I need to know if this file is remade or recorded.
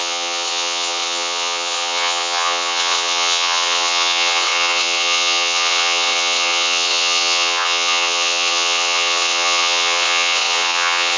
remade